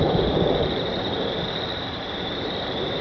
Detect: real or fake fake